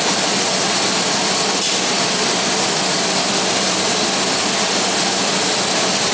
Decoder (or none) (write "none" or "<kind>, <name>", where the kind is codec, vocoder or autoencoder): none